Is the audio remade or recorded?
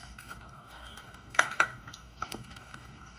remade